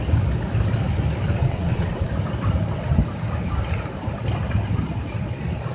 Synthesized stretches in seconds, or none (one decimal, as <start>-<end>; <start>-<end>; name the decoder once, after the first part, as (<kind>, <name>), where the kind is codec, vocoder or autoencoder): 1.4-2.1 (vocoder, WaveNeXt)